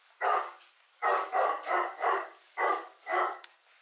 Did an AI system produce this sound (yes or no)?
yes